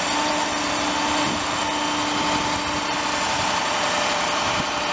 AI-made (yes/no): no